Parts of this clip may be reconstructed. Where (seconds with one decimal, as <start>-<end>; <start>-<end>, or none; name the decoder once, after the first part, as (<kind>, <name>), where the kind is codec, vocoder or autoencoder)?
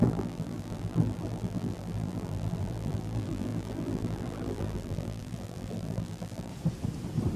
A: 0.0-6.5 (vocoder, BigVGAN v2)